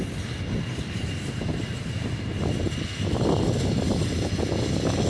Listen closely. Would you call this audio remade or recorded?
recorded